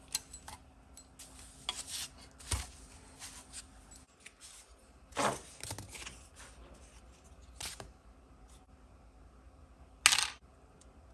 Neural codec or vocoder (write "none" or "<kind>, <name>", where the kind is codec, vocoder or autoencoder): none